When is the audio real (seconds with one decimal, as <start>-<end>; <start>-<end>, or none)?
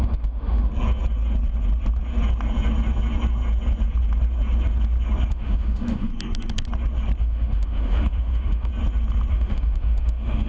0.7-5.3; 6.1-7.2; 8.7-9.3